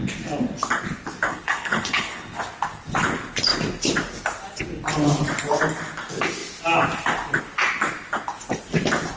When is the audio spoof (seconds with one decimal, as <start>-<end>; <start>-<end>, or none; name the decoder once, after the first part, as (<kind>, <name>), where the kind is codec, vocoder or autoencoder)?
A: 1.3-2.4 (codec, HILCodec)